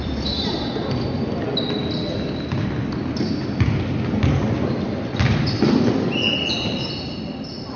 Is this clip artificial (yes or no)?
no